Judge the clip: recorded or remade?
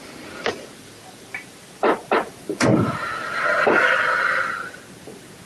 recorded